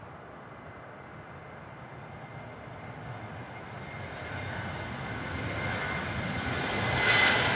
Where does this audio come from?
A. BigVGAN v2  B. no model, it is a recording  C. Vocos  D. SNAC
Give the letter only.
A